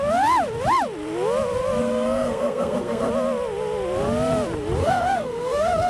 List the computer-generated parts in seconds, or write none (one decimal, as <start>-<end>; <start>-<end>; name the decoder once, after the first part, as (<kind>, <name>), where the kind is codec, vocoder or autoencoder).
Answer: 1.8-3.1 (codec, SNAC); 4.8-5.9